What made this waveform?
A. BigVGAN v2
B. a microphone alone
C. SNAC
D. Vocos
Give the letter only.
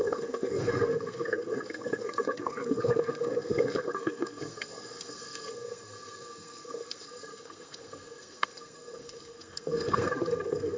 C